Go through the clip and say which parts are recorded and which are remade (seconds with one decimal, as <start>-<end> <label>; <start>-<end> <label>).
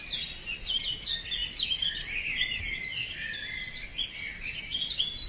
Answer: 0.0-5.3 recorded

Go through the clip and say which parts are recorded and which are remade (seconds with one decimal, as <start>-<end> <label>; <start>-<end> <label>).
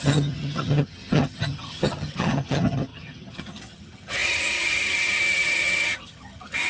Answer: 0.0-6.7 remade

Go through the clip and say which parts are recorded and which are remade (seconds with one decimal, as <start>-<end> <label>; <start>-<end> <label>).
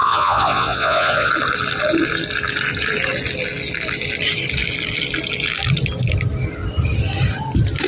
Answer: 0.0-1.3 remade; 1.3-7.9 recorded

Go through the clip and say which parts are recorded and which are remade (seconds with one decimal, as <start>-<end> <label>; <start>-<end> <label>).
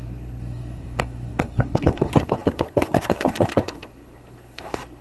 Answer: 0.0-5.0 remade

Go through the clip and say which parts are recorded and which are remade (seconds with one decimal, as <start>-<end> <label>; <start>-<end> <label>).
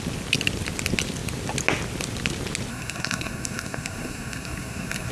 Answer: 0.0-2.7 recorded; 2.7-5.1 remade